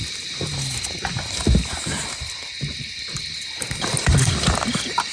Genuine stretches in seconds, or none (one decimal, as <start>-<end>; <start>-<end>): 0.0-5.1